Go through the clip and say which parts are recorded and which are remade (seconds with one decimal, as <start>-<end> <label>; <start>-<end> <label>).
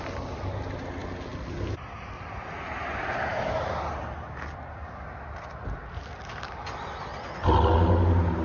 0.0-8.4 recorded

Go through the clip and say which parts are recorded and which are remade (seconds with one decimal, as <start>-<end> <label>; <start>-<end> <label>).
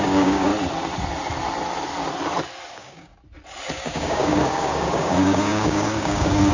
0.0-0.5 remade; 0.5-2.7 recorded; 2.7-3.1 remade; 3.1-3.7 recorded; 3.7-6.5 remade